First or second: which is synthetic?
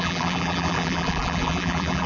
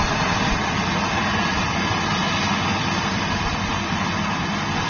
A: first